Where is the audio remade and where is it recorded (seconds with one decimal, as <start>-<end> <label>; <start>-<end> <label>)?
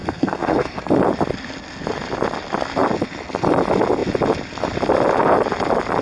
0.0-0.8 remade; 0.8-6.0 recorded